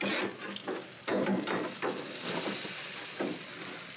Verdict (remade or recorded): remade